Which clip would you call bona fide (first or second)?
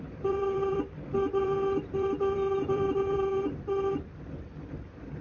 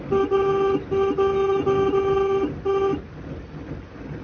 second